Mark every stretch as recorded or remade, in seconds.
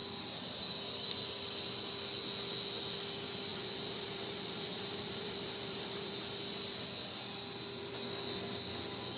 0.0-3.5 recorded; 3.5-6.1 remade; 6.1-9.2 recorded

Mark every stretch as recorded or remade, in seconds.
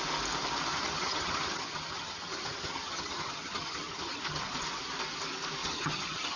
0.0-0.7 recorded; 0.7-4.4 remade; 4.4-5.6 recorded; 5.6-6.4 remade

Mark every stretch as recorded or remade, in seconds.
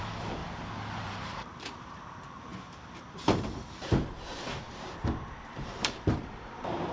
0.0-0.4 remade; 0.4-1.0 recorded; 1.0-2.5 remade; 2.5-5.4 recorded; 5.4-6.9 remade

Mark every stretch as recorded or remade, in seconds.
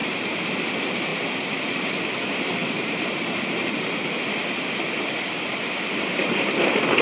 0.0-0.5 remade; 0.5-2.6 recorded; 2.6-4.2 remade; 4.2-7.0 recorded